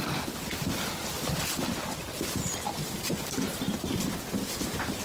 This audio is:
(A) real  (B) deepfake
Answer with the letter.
A